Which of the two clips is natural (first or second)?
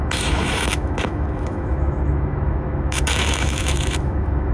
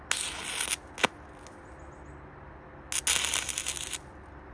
second